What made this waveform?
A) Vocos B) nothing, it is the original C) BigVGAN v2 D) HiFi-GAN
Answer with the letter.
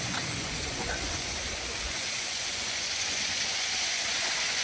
A